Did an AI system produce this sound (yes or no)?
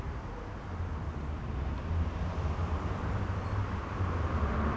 yes